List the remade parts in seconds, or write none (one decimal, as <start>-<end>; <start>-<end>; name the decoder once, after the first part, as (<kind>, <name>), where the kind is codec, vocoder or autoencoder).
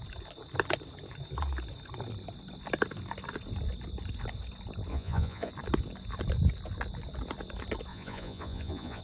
4.9-5.5 (vocoder, Vocos); 7.9-9.0